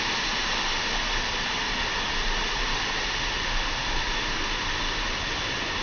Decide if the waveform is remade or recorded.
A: recorded